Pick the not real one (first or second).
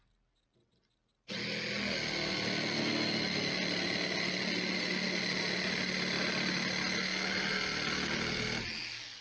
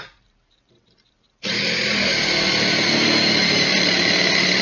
second